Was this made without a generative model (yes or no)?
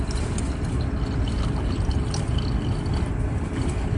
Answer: yes